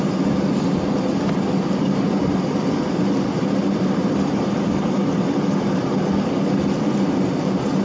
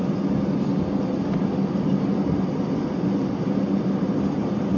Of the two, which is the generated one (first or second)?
first